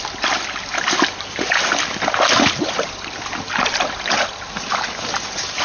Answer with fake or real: real